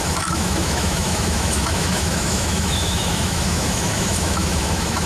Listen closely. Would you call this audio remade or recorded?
remade